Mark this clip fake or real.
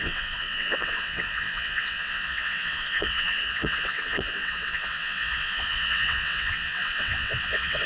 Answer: fake